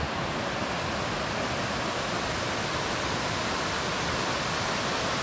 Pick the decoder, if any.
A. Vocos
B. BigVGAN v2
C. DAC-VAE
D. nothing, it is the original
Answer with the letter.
D